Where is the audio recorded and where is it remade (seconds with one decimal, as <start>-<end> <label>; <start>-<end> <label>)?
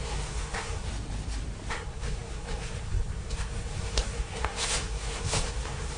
0.0-0.9 remade; 0.9-1.7 recorded; 1.7-6.0 remade